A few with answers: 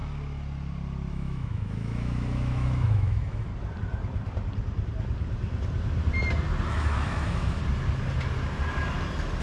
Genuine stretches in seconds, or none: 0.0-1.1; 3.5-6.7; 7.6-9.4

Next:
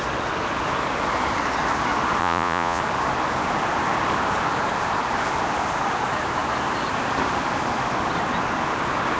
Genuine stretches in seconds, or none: 0.0-2.2; 2.8-9.2

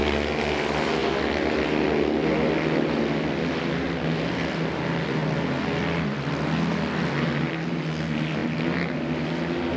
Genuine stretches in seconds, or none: 0.0-9.8

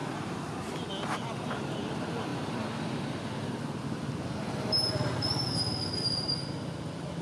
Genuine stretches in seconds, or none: 0.0-7.2

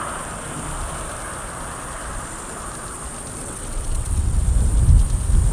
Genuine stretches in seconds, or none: 0.0-3.4; 4.4-5.5

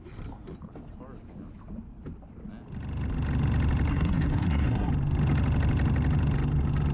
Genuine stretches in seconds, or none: 0.0-3.9; 4.9-6.9

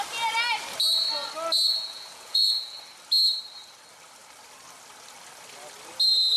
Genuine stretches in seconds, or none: 0.0-1.7; 2.8-6.4